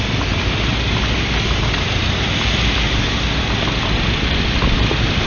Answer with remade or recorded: recorded